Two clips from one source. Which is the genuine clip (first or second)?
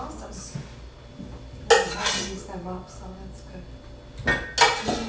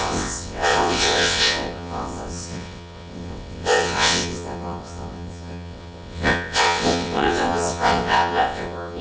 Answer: first